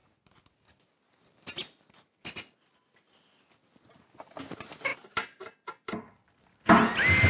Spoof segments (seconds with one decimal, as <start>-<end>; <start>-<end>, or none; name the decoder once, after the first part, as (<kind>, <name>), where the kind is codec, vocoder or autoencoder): none